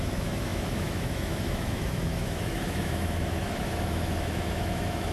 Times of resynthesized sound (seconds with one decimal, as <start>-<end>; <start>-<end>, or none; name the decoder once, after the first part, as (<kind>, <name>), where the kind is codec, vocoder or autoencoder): 0.0-5.1 (autoencoder, DAC-VAE)